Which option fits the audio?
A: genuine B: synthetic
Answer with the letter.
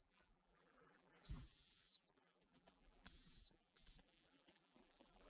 B